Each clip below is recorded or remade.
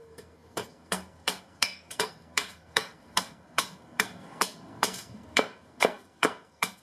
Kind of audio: remade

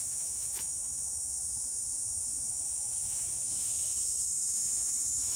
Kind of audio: remade